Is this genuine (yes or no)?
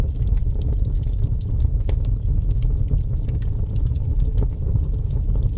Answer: yes